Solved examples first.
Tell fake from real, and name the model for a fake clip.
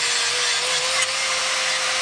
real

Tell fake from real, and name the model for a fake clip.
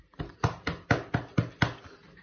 real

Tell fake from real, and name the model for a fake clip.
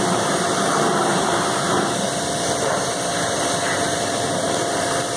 fake, vocoder, BigVGAN v2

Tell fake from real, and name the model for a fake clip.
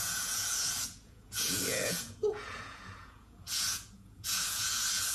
fake, vocoder, Vocos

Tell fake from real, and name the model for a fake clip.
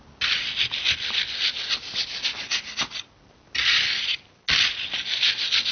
real